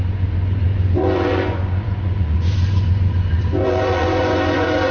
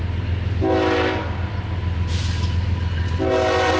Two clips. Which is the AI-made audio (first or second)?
first